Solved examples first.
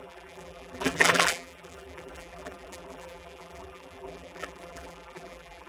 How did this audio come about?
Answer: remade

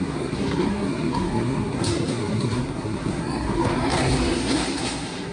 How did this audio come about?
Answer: remade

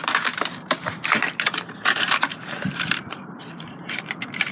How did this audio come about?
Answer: remade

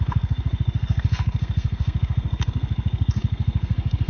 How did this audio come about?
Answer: remade